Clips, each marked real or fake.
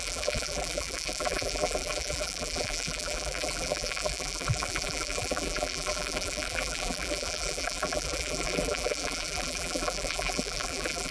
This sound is fake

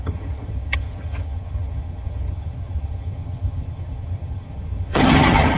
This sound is fake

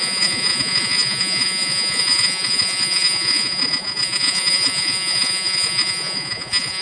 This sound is fake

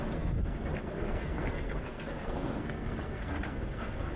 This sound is fake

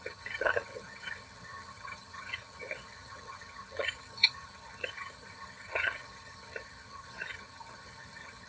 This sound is fake